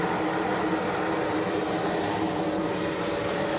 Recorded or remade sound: recorded